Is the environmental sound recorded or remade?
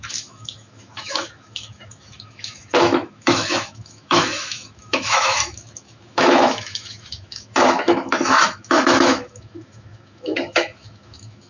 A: remade